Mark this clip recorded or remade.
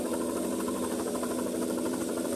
remade